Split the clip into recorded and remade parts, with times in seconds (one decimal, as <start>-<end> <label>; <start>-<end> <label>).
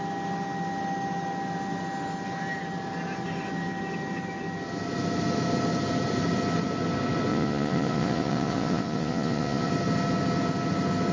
0.0-7.3 recorded; 7.3-9.7 remade; 9.7-11.1 recorded